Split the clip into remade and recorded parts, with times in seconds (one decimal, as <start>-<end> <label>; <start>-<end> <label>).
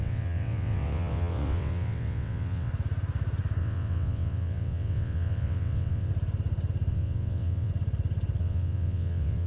0.0-2.7 remade; 2.7-3.6 recorded; 3.6-6.1 remade; 6.1-6.9 recorded; 6.9-7.7 remade; 7.7-8.4 recorded; 8.4-9.5 remade